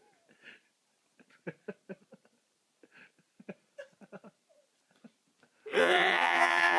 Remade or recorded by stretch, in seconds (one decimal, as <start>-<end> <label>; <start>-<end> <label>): 0.0-5.8 recorded; 5.8-6.8 remade